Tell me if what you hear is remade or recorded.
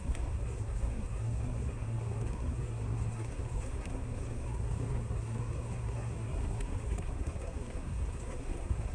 remade